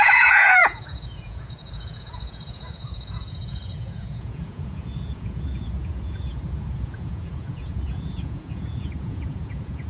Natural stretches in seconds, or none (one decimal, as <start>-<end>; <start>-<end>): none